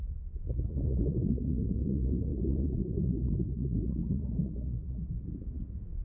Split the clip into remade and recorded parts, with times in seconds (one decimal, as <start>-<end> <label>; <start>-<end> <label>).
0.0-6.0 remade